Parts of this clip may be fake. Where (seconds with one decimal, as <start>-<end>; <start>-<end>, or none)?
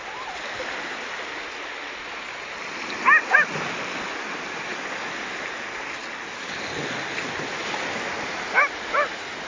none